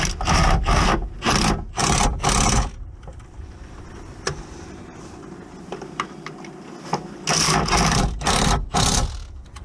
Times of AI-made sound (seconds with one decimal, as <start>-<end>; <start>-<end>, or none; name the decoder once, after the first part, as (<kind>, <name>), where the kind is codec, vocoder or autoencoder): none